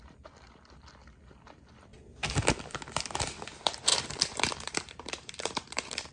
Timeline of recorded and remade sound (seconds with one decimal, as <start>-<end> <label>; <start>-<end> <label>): 0.0-3.9 recorded; 3.9-6.1 remade